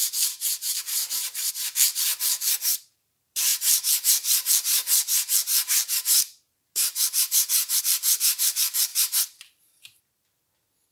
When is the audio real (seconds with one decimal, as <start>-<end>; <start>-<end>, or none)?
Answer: none